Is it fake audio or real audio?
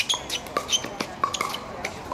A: real